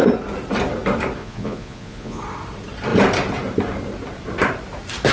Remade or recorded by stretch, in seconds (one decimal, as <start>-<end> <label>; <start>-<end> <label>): 0.0-1.2 recorded; 1.2-2.2 remade; 2.2-5.1 recorded